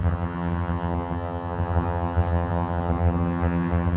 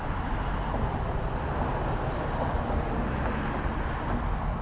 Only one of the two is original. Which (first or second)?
second